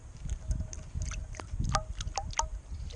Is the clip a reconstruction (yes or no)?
no